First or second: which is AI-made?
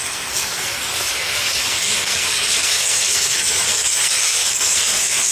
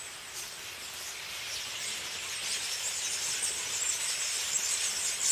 first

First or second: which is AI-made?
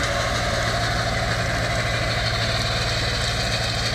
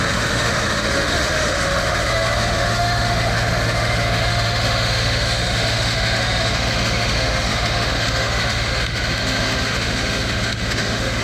second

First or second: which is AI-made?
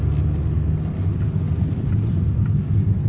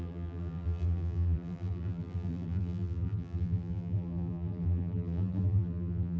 second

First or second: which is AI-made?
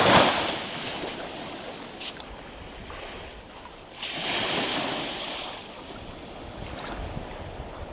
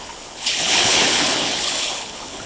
second